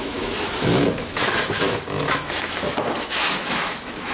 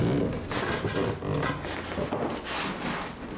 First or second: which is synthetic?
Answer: first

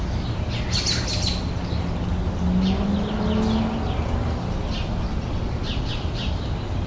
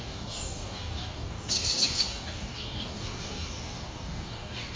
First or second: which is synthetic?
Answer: second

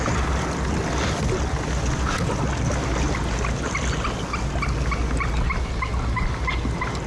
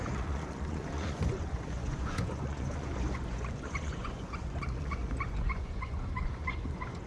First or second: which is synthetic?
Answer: second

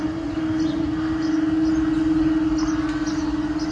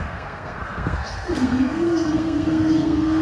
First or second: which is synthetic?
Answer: second